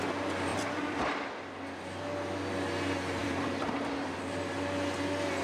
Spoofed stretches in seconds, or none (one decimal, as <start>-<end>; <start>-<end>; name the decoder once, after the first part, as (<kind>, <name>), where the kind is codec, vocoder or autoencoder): 0.5-1.3 (vocoder, BigVGAN v2); 3.2-4.2